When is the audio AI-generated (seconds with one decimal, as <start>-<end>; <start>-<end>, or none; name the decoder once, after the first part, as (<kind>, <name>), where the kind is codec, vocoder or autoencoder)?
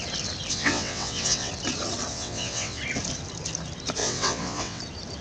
0.5-1.5 (vocoder, WaveNeXt); 2.1-2.8; 4.0-4.8